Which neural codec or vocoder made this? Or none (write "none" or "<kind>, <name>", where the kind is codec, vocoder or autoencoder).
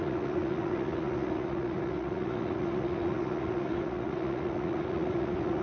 vocoder, Vocos